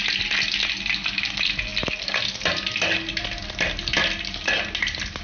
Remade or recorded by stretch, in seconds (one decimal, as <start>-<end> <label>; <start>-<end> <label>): 0.0-5.2 recorded